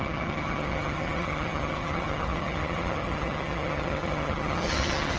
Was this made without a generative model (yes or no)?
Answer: no